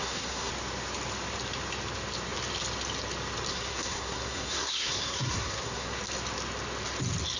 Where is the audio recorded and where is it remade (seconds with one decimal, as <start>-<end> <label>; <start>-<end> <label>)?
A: 0.0-0.5 remade; 0.5-3.5 recorded; 3.5-6.0 remade; 6.0-7.4 recorded